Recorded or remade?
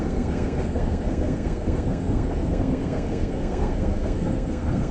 remade